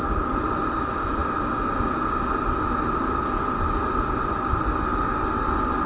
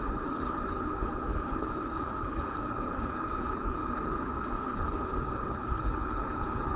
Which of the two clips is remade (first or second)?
second